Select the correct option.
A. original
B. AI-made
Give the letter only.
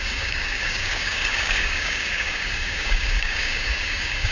B